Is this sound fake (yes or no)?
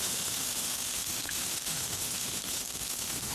yes